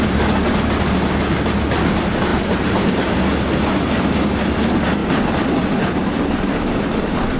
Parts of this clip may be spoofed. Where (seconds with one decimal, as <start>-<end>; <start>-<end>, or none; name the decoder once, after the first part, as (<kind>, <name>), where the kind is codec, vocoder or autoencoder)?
2.3-2.9 (vocoder, BigVGAN v2)